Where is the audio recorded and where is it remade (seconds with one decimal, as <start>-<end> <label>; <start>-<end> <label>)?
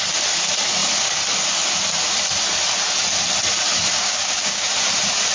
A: 0.0-4.0 recorded; 4.0-4.7 remade; 4.7-5.3 recorded